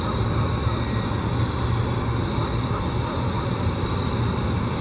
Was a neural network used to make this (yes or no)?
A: no